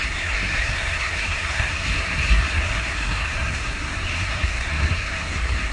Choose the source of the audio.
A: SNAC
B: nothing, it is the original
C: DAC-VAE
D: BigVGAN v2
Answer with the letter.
A